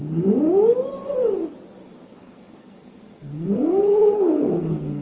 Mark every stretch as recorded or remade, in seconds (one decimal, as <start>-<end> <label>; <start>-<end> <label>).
0.0-1.9 recorded; 1.9-5.0 remade